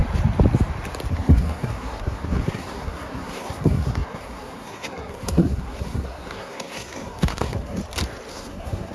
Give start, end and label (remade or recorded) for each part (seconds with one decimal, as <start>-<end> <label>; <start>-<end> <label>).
0.0-1.1 recorded; 1.1-7.8 remade; 7.8-8.3 recorded; 8.3-8.9 remade